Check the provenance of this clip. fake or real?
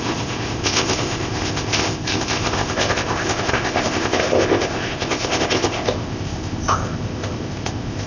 fake